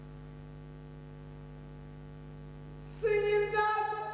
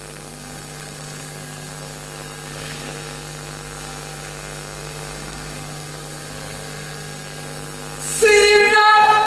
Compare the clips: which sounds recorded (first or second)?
first